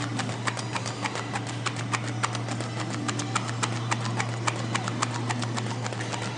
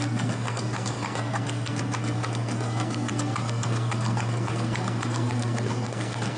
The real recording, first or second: first